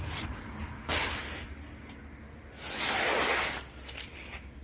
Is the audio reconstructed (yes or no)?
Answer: no